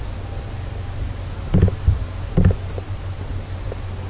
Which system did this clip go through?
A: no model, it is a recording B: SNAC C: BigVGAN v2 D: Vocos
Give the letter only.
A